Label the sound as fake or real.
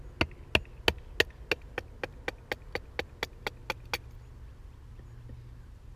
real